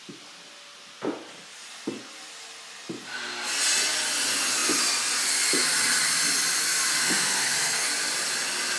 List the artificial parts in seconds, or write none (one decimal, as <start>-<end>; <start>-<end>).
6.9-7.9